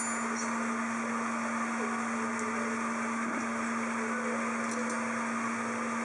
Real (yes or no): yes